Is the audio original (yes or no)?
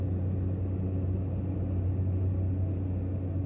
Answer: yes